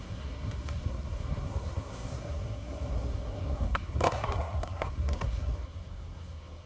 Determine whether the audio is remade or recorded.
remade